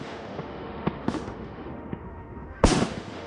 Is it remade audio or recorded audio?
remade